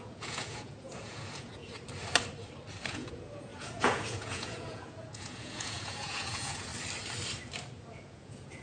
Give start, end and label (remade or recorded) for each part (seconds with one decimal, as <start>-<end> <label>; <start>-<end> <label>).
0.0-1.6 remade; 1.6-2.9 recorded; 2.9-6.7 remade; 6.7-7.9 recorded; 7.9-8.6 remade